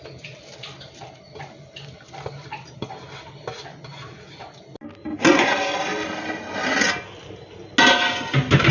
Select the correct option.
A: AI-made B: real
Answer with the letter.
B